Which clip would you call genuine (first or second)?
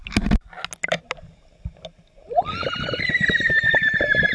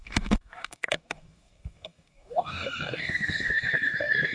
first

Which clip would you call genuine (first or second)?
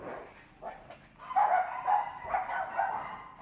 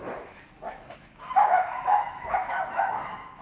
first